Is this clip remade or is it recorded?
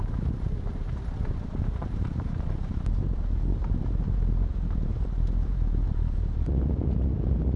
remade